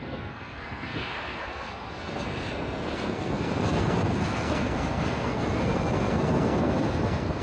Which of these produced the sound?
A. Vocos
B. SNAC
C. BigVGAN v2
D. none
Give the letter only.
B